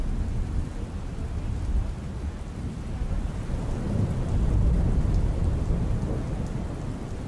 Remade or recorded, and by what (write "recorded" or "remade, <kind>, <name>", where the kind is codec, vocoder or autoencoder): recorded